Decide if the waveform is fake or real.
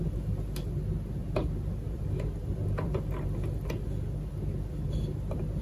real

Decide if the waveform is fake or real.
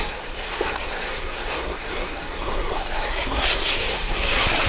fake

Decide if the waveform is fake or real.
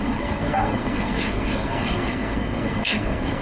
fake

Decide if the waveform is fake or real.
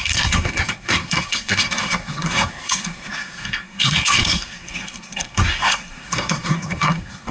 fake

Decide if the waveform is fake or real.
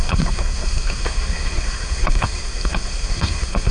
fake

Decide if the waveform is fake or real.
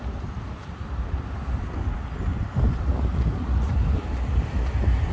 real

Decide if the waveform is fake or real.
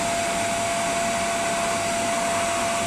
real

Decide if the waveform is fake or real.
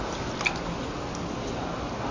real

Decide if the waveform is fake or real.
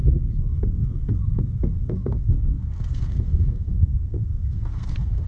fake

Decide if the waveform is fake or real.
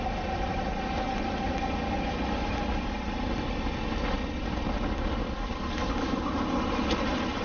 real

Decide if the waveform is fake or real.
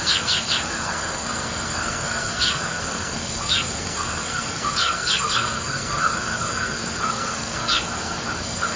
fake